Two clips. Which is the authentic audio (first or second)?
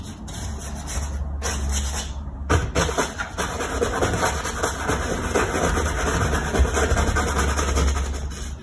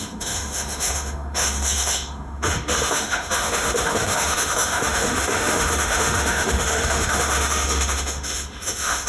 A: first